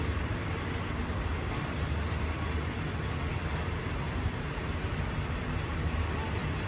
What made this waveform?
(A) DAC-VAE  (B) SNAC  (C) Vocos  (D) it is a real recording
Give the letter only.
D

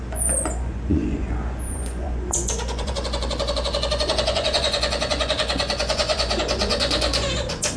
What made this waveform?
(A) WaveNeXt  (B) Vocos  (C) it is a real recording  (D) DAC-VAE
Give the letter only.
B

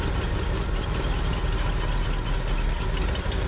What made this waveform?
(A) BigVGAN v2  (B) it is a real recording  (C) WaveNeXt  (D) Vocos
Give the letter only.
B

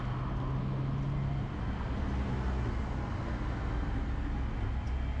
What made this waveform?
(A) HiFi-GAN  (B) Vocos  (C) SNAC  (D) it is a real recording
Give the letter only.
D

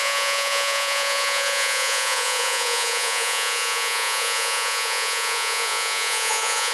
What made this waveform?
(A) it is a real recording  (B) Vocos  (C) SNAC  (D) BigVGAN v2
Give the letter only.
B